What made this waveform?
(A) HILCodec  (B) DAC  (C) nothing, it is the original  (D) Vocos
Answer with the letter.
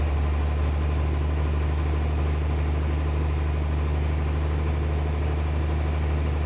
C